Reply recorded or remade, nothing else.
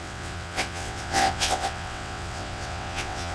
remade